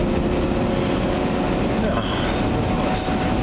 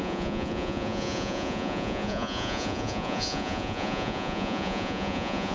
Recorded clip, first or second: first